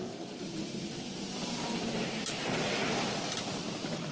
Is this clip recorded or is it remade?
recorded